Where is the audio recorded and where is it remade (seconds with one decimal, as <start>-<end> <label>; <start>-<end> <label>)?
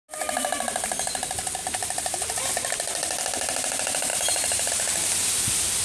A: 0.0-1.6 recorded; 1.6-2.5 remade; 2.5-4.1 recorded; 4.1-4.7 remade; 4.7-5.8 recorded